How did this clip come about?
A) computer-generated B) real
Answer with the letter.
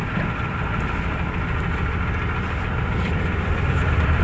B